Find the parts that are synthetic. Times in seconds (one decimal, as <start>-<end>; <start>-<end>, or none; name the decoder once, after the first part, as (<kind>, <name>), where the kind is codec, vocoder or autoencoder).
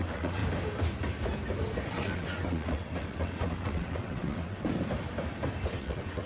0.0-0.4 (vocoder, WaveNeXt); 1.9-4.7; 5.7-6.3